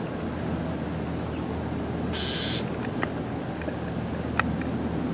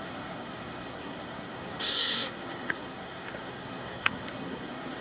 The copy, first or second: second